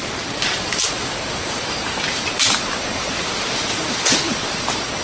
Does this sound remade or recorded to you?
recorded